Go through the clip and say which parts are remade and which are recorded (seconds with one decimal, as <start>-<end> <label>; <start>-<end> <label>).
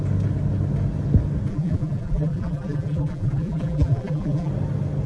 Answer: 0.0-1.5 recorded; 1.5-4.5 remade; 4.5-5.1 recorded